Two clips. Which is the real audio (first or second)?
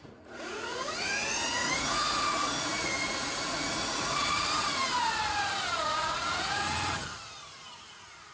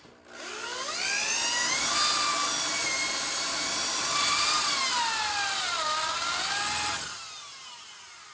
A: second